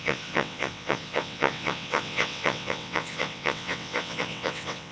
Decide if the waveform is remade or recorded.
remade